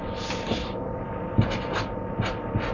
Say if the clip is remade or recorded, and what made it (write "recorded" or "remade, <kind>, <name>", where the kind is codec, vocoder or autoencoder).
recorded